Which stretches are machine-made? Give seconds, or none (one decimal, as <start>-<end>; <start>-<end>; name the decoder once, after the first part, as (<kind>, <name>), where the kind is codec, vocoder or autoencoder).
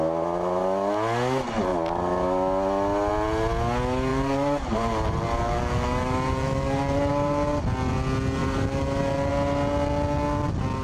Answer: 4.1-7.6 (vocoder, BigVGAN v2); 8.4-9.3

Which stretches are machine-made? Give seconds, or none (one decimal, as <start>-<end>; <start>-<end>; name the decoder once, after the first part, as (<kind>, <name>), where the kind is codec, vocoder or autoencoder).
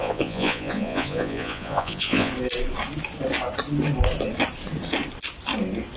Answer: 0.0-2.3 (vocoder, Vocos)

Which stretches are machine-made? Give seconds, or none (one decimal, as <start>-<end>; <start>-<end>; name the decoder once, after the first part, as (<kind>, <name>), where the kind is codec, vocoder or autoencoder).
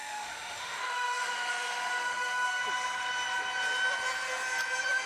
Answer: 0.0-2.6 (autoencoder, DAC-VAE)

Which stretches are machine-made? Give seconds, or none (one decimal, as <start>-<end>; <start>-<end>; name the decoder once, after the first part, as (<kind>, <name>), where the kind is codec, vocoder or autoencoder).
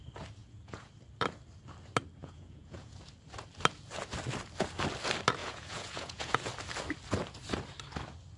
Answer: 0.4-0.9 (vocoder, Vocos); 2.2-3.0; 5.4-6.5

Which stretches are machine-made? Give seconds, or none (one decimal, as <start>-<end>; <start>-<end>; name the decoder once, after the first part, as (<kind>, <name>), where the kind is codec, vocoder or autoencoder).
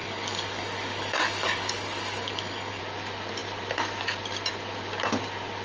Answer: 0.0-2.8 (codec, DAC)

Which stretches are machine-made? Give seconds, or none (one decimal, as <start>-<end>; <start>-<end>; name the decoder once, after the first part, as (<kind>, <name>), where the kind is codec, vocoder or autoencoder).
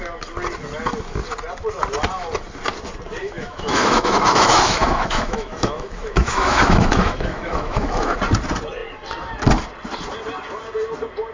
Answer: 3.2-8.2 (autoencoder, DAC-VAE)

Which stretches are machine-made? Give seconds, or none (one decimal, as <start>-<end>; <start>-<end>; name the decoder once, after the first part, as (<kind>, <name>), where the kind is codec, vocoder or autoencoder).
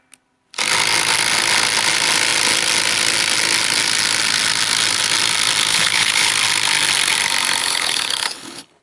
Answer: 5.7-6.3 (codec, HILCodec); 7.6-8.8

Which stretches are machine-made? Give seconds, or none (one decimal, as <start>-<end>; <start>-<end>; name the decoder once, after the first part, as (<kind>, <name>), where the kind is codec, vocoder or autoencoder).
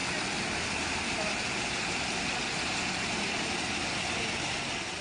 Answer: none